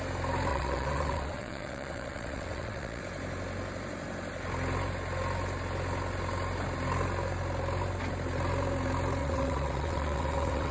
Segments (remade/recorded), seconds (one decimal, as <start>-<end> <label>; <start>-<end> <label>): 0.0-0.5 recorded; 0.5-3.0 remade; 3.0-9.2 recorded; 9.2-10.7 remade

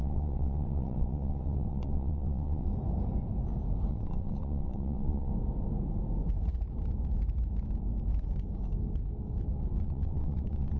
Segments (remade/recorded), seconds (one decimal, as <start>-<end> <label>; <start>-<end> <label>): 0.0-2.7 remade; 2.7-3.9 recorded; 3.9-5.3 remade; 5.3-9.8 recorded; 9.8-10.8 remade

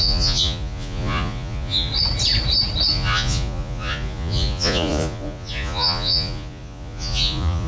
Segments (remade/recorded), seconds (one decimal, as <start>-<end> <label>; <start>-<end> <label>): 0.0-1.9 remade; 1.9-2.9 recorded; 2.9-7.7 remade

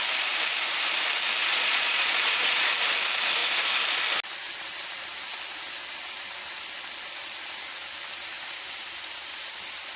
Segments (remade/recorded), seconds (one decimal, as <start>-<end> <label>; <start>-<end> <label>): 0.0-1.5 recorded; 1.5-2.7 remade; 2.7-10.0 recorded

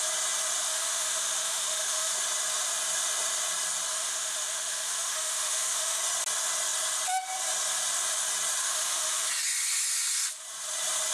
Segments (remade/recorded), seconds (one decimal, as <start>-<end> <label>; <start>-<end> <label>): 0.0-0.7 recorded; 0.7-2.1 remade; 2.1-3.9 recorded; 3.9-6.0 remade; 6.0-8.6 recorded; 8.6-9.3 remade; 9.3-11.1 recorded

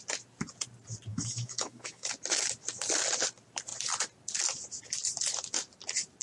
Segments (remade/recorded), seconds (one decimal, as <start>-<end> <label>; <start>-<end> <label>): 0.0-1.1 recorded; 1.1-2.1 remade; 2.1-6.2 recorded

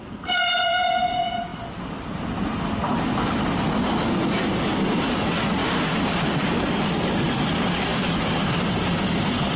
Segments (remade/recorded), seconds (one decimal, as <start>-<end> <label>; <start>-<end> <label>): 0.0-5.6 recorded; 5.6-6.9 remade; 6.9-9.6 recorded